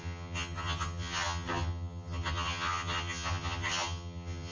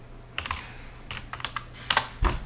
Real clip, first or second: second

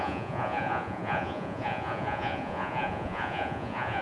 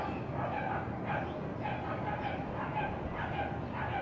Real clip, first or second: second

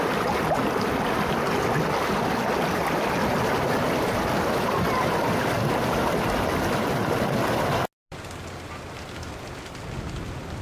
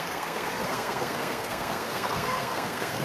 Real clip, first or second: first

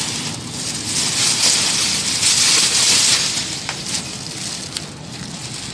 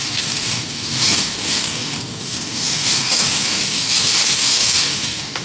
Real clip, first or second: first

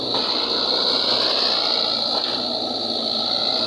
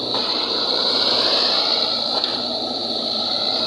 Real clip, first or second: first